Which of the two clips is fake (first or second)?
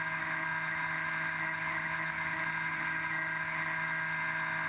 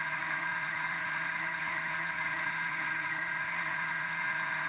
second